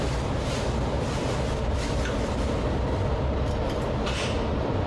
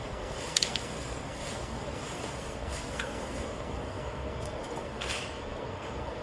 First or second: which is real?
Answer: first